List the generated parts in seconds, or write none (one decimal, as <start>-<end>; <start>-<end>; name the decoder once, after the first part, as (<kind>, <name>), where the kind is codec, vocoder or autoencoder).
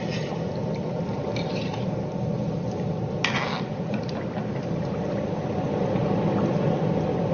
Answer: none